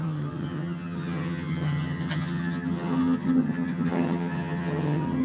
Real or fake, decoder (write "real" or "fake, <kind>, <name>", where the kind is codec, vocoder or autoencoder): fake, vocoder, HiFi-GAN